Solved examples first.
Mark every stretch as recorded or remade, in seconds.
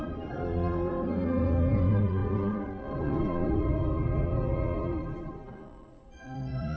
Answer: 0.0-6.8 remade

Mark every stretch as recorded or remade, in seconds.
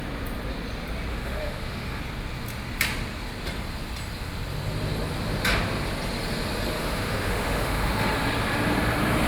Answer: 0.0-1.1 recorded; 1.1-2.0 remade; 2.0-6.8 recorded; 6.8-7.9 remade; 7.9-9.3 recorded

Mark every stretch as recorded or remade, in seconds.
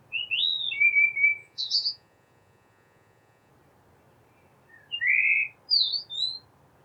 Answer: 0.0-1.4 recorded; 1.4-3.5 remade; 3.5-6.8 recorded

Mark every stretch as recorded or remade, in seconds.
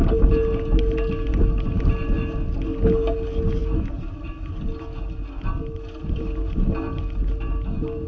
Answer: 0.0-8.1 recorded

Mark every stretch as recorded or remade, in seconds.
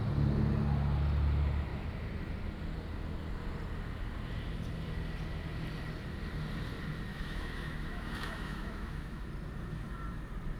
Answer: 0.0-7.1 recorded; 7.1-9.3 remade; 9.3-10.6 recorded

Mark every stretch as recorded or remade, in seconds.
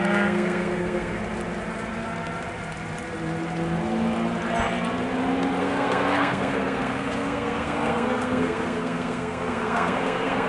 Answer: 0.0-1.2 remade; 1.2-5.6 recorded; 5.6-10.5 remade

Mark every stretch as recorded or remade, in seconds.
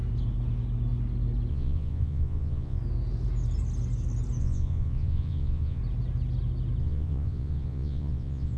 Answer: 0.0-1.5 recorded; 1.5-2.8 remade; 2.8-4.4 recorded; 4.4-5.8 remade; 5.8-6.8 recorded; 6.8-8.6 remade